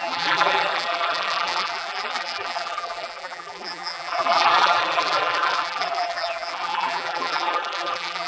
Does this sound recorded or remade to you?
remade